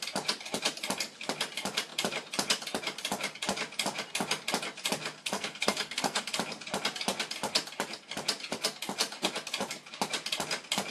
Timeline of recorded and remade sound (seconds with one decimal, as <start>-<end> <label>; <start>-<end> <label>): 0.0-5.2 recorded; 5.2-6.3 remade; 6.3-10.9 recorded